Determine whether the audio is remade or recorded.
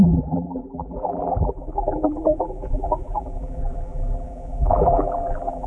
remade